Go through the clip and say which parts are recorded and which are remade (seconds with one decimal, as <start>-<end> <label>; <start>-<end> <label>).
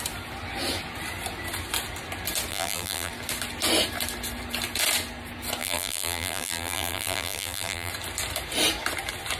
0.0-2.5 recorded; 2.5-3.1 remade; 3.1-5.6 recorded; 5.6-7.9 remade; 7.9-9.4 recorded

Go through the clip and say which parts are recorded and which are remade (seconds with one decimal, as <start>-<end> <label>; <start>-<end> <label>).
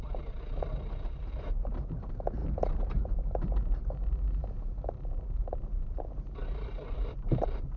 0.0-4.4 remade; 4.4-4.9 recorded; 4.9-7.8 remade